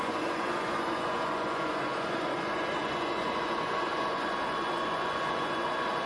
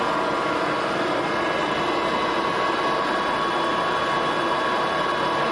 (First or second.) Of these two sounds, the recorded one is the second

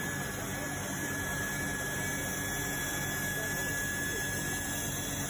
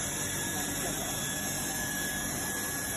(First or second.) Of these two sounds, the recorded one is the first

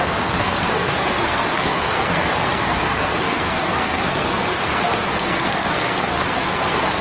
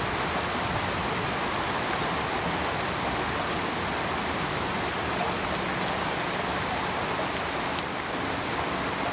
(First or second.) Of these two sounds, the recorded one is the second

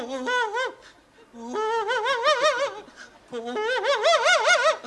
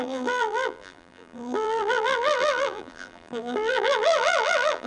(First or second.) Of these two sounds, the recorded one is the first